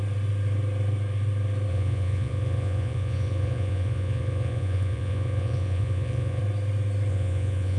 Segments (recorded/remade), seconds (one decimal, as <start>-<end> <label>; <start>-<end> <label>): 0.0-1.7 recorded; 1.7-6.4 remade; 6.4-7.1 recorded; 7.1-7.8 remade